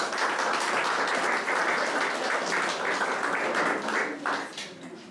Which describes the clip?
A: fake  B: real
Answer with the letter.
B